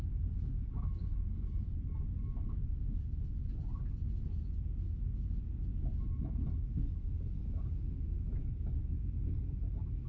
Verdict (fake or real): real